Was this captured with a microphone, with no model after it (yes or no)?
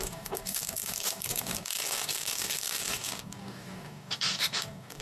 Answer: no